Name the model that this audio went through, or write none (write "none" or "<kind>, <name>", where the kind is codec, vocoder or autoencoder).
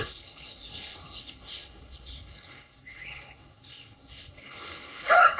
codec, HILCodec